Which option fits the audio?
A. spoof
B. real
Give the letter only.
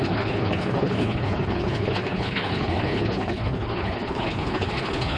A